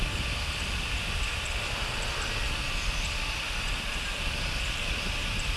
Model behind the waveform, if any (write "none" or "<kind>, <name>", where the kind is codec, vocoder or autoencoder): none